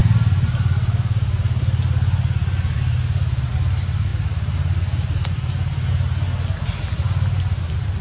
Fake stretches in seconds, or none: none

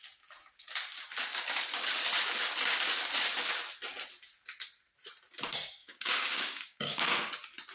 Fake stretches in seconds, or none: 5.8-7.3

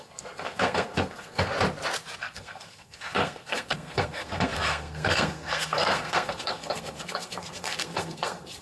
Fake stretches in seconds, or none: 0.0-1.5; 2.2-8.6

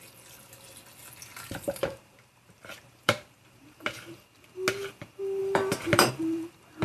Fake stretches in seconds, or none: 1.3-4.2; 5.4-6.1

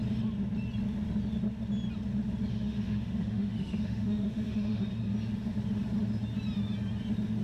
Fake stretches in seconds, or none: 2.5-4.8

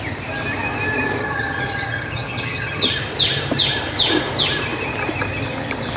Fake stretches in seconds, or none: 1.2-2.9